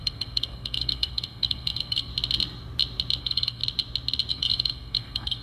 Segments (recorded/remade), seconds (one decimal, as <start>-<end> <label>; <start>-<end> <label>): 0.0-2.1 remade; 2.1-3.2 recorded; 3.2-3.6 remade; 3.6-4.3 recorded; 4.3-5.4 remade